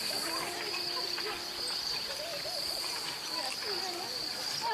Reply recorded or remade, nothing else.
recorded